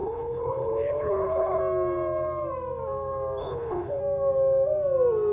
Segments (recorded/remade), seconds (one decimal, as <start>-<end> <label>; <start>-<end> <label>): 0.0-1.6 remade; 1.6-3.4 recorded; 3.4-4.0 remade; 4.0-5.3 recorded